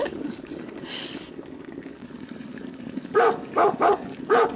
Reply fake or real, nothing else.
fake